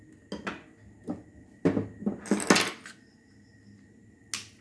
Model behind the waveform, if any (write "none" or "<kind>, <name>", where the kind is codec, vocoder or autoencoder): none